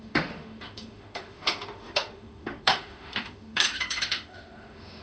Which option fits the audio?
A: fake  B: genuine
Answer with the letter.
A